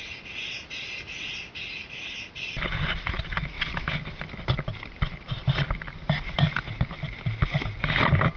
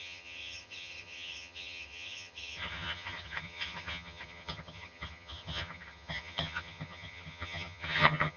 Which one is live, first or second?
first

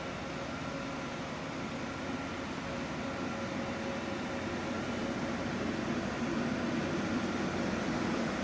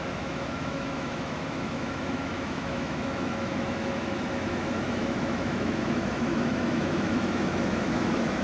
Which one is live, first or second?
first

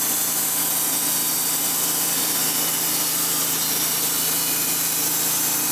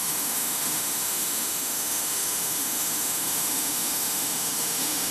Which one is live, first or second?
first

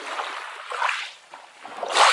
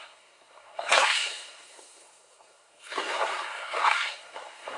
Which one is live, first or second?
first